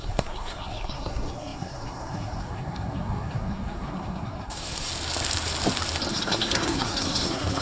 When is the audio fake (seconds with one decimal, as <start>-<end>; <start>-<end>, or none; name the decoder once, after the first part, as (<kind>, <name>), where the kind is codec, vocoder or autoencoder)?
0.0-4.9 (codec, SNAC); 6.1-7.6